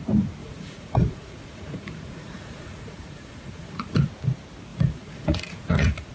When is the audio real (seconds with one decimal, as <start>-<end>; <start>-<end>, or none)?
0.0-0.4; 4.1-4.7

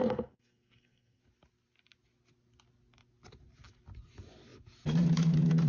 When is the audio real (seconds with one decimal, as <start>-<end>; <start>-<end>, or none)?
1.2-5.7

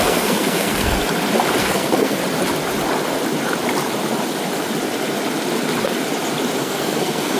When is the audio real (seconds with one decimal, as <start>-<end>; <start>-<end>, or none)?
1.0-1.6; 2.2-6.6

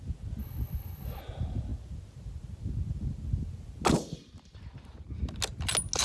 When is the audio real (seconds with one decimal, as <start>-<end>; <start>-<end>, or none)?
0.0-0.4; 1.2-6.0

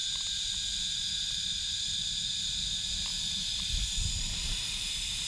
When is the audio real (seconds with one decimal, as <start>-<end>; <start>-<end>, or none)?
0.0-5.3

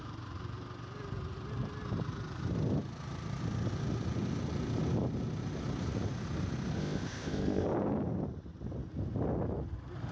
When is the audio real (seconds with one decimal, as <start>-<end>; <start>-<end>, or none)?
0.0-6.8; 7.6-10.1